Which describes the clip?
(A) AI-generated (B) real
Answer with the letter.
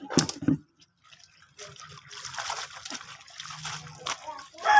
B